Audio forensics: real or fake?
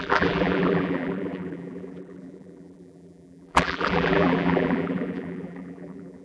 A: fake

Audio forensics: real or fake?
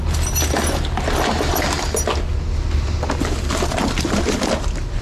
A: real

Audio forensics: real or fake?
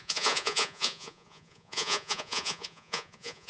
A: fake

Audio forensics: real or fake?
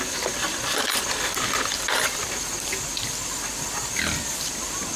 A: fake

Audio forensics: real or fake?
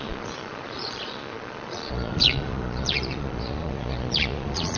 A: fake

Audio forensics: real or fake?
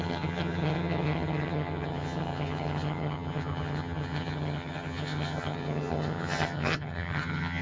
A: fake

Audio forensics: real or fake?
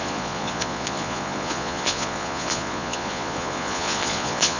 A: fake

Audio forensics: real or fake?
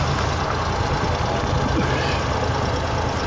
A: real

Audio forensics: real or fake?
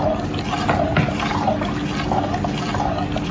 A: real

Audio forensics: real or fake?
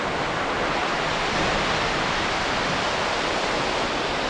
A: real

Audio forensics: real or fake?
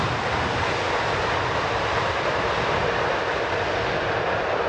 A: real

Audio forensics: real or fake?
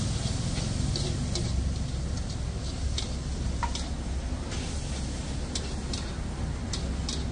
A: real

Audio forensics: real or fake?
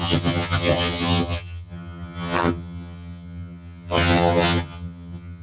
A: fake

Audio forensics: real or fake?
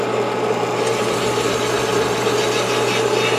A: real